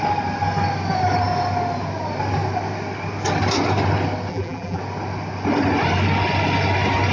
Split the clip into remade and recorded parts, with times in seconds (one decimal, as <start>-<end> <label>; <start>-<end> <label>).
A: 0.0-4.3 recorded; 4.3-4.8 remade; 4.8-7.1 recorded